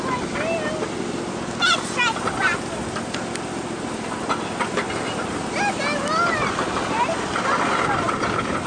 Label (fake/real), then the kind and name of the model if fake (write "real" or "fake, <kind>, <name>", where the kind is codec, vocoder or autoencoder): real